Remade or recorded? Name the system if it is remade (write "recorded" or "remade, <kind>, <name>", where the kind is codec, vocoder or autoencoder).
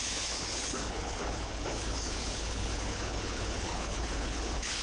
remade, codec, HILCodec